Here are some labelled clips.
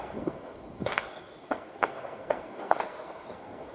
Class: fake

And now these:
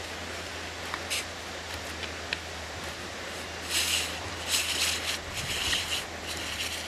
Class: real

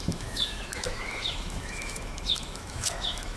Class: fake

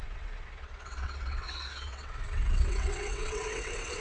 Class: fake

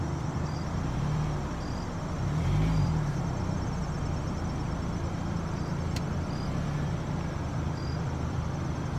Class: real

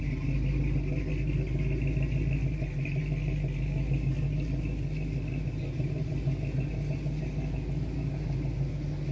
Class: real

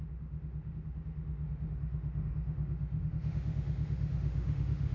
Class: fake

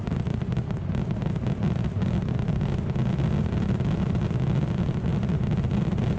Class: real